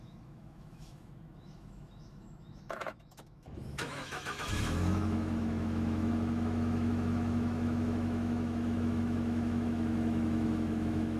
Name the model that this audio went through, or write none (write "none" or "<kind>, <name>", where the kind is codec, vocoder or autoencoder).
autoencoder, DAC-VAE